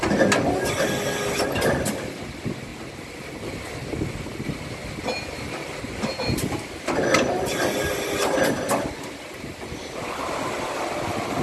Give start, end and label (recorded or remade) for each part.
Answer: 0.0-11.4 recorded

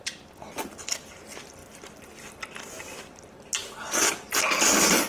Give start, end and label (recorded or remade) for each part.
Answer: 0.0-5.1 recorded

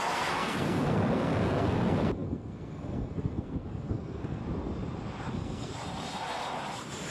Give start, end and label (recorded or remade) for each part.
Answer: 0.0-4.4 remade; 4.4-5.3 recorded; 5.3-5.7 remade; 5.7-7.1 recorded

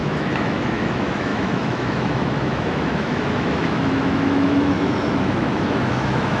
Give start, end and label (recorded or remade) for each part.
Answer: 0.0-6.4 remade